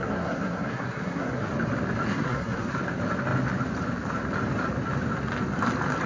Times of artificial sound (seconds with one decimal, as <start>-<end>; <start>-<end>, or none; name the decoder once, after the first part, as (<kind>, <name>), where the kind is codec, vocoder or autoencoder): 0.0-1.5 (codec, SNAC); 2.1-2.8